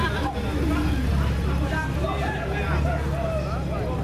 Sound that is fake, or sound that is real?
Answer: real